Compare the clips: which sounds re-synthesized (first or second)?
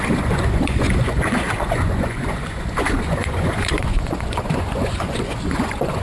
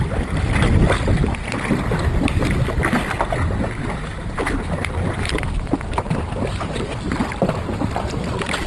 first